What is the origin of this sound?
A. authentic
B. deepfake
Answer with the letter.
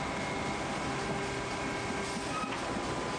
A